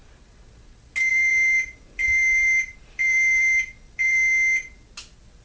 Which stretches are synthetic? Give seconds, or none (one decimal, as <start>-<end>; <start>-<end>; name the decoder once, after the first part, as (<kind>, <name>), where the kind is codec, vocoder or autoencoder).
1.1-4.3 (vocoder, BigVGAN v2)